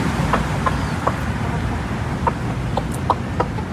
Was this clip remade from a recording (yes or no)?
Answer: no